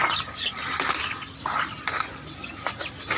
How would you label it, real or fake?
real